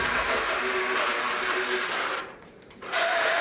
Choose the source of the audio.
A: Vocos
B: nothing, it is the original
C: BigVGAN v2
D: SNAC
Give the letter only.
C